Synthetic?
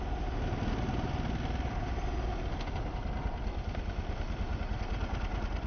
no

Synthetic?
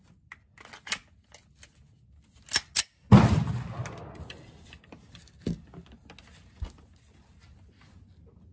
no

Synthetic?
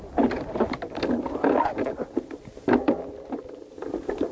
no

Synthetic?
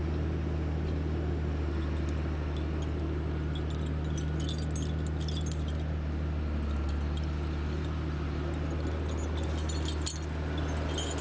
no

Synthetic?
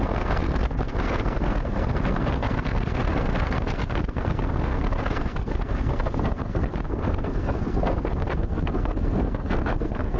yes